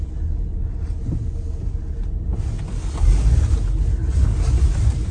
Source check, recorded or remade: recorded